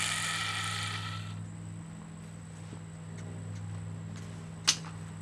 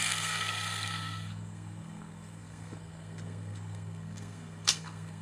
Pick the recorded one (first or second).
first